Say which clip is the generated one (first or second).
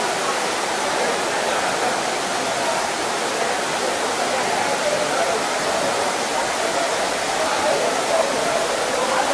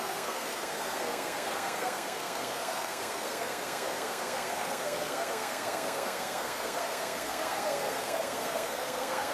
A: second